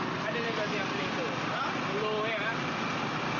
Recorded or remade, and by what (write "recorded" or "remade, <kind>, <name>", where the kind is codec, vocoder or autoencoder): recorded